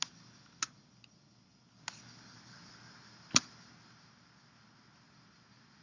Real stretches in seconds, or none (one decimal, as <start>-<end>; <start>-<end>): 0.0-5.8